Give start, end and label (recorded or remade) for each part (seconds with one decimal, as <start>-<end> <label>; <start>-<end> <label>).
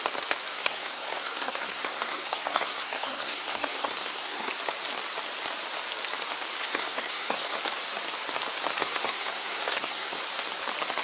0.0-0.5 recorded; 0.5-4.5 remade; 4.5-6.6 recorded; 6.6-7.6 remade; 7.6-8.8 recorded; 8.8-10.2 remade; 10.2-11.0 recorded